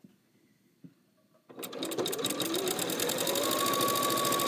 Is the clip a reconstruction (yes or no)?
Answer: no